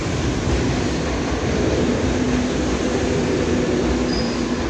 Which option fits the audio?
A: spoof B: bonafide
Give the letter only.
B